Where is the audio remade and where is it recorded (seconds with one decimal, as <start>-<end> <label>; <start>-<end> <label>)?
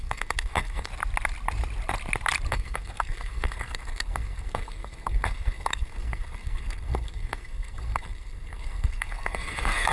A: 0.0-0.9 remade; 0.9-2.5 recorded; 2.5-9.9 remade